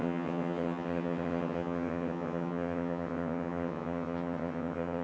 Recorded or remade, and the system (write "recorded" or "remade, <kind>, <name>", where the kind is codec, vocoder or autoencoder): remade, vocoder, HiFi-GAN